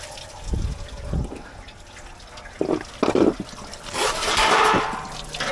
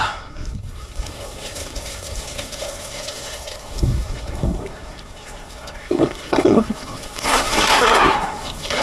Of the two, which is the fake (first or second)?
second